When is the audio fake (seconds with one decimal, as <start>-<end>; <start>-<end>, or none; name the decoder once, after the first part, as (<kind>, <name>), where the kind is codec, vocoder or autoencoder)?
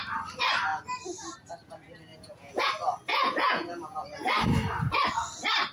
2.1-2.7 (vocoder, Vocos); 3.1-4.3